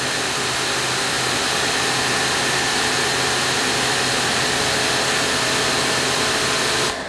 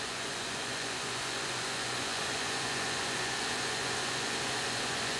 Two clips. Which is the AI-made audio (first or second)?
second